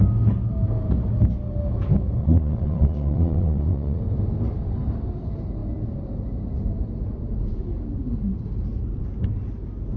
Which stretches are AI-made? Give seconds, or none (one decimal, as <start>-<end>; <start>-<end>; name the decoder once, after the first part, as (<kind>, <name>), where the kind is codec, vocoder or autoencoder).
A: 2.2-4.0 (vocoder, Vocos)